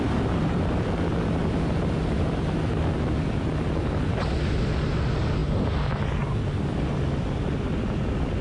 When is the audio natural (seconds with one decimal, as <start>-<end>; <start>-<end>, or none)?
0.0-8.4